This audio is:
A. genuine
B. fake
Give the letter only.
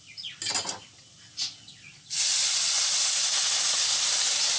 A